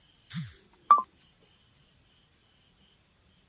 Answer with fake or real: real